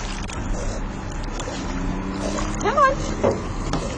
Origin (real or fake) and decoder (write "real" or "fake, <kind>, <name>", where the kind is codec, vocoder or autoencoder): real